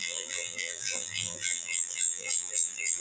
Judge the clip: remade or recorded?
remade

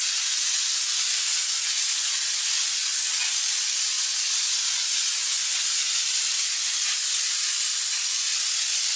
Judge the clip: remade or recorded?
recorded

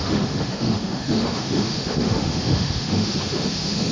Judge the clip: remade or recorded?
remade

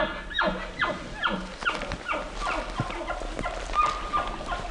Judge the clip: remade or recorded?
recorded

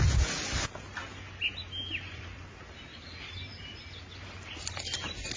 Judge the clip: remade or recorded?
recorded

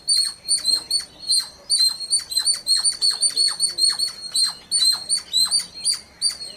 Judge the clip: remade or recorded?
recorded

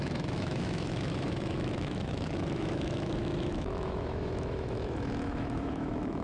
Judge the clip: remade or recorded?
remade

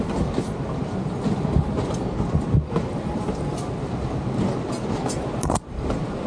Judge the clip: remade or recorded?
recorded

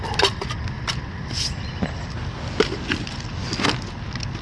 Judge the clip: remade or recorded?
recorded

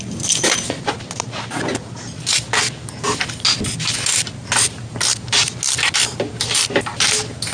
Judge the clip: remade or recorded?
recorded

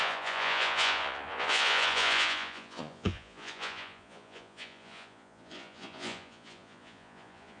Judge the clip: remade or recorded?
remade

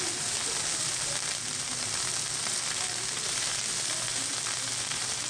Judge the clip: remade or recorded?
recorded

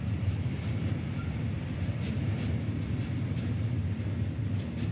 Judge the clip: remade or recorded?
remade